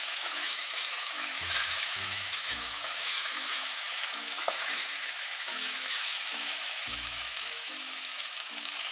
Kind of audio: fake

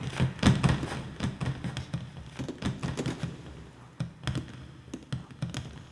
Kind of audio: real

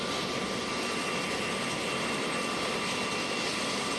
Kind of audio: real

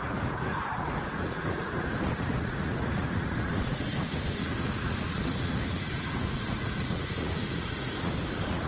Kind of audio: fake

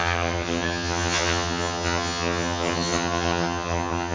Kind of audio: fake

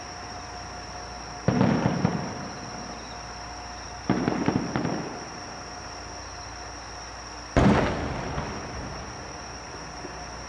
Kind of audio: real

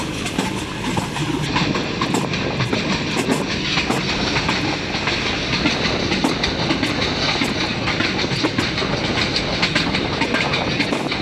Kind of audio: real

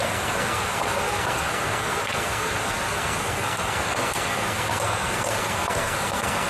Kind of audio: fake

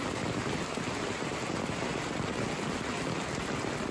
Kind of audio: real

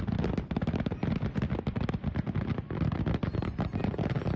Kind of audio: real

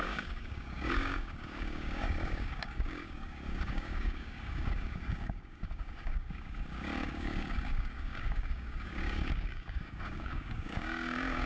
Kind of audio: fake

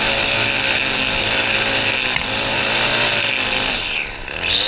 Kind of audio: real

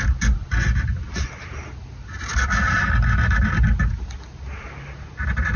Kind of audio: real